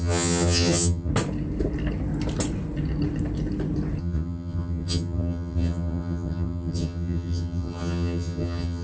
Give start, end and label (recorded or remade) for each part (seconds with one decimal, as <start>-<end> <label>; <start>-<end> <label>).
0.0-1.1 remade; 1.1-4.0 recorded; 4.0-8.8 remade